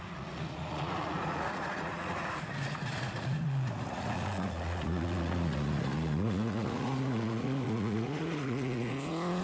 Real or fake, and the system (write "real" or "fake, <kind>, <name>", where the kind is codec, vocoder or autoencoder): fake, vocoder, Vocos